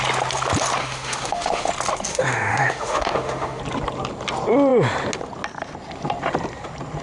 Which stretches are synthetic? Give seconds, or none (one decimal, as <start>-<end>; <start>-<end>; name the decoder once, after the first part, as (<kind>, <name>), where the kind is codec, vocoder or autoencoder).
0.8-1.7 (autoencoder, DAC-VAE); 2.1-3.6